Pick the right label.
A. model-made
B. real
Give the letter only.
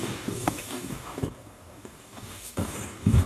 A